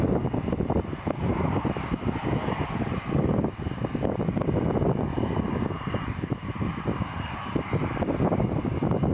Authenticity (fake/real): real